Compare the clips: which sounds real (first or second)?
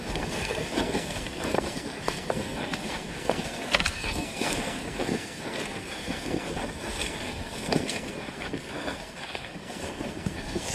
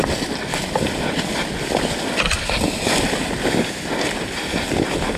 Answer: second